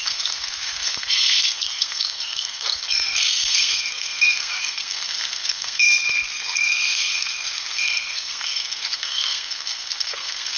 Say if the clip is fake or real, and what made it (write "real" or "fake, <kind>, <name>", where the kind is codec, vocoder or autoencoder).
fake, codec, SNAC